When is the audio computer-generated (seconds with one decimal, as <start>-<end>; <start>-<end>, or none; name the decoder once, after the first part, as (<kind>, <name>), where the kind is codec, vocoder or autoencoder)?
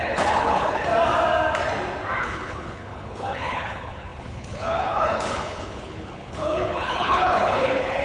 0.0-0.9 (codec, HILCodec); 2.2-8.0